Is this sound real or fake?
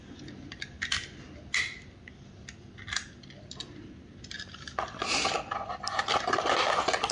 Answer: real